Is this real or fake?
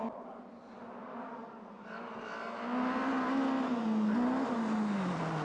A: real